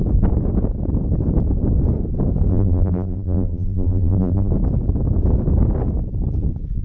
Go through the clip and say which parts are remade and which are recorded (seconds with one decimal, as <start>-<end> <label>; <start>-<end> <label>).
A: 0.0-2.5 recorded; 2.5-4.5 remade; 4.5-6.8 recorded